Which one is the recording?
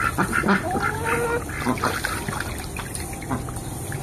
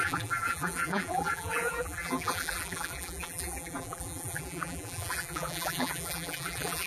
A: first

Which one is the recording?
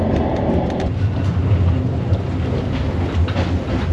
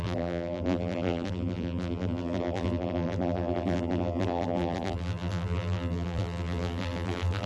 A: first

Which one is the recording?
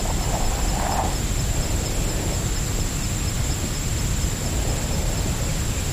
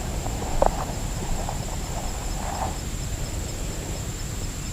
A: first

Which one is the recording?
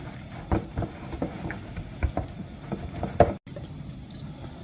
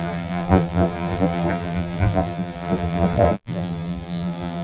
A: first